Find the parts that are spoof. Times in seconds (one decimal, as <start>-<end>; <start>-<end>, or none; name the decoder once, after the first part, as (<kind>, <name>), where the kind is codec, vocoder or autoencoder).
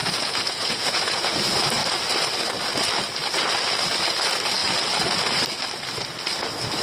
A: 0.0-1.4 (vocoder, Vocos)